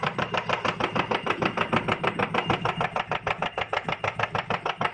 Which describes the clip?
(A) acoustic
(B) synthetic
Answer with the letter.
A